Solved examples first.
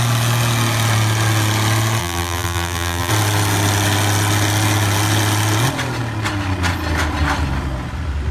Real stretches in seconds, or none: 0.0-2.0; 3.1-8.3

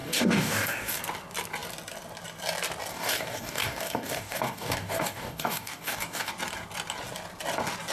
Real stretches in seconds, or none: 1.0-2.9; 6.3-7.9

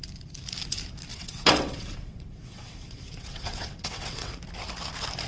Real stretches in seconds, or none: 0.0-1.1; 4.3-5.3

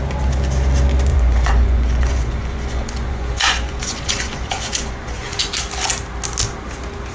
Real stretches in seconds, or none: 0.0-1.1; 5.4-7.1